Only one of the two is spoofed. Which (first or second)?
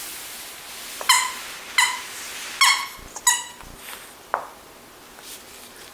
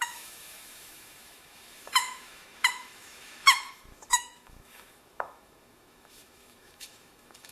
second